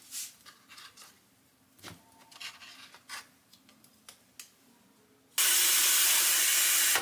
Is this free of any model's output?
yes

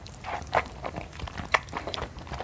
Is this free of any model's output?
no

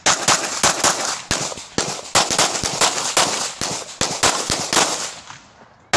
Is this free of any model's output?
yes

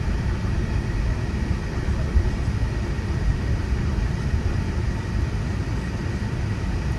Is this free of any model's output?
no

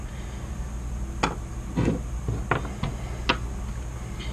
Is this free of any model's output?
yes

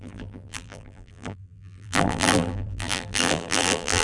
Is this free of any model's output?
no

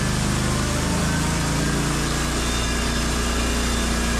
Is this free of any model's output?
yes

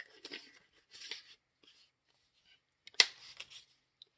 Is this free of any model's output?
yes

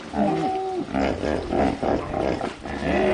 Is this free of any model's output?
yes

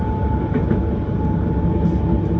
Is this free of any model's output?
yes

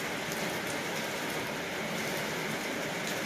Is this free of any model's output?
yes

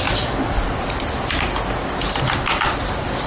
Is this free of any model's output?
no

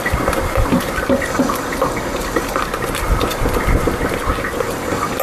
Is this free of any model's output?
yes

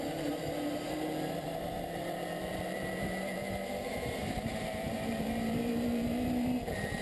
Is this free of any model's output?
no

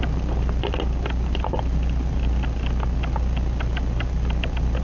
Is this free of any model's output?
yes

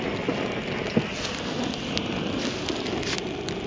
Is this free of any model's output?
yes